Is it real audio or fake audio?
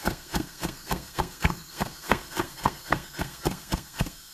fake